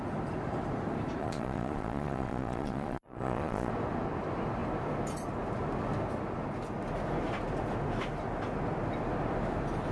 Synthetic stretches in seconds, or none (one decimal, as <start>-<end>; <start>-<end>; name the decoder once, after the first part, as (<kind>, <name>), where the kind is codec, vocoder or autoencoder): 1.2-3.7 (vocoder, Vocos)